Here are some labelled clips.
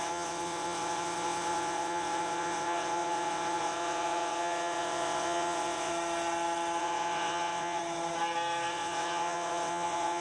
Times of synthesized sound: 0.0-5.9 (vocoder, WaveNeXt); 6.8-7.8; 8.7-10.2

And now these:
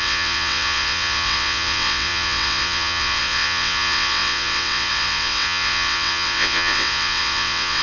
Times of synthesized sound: 0.0-7.8 (vocoder, WaveNeXt)